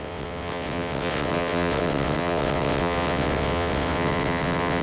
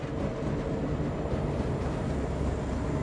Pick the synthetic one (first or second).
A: first